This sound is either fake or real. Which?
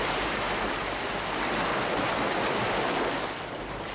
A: real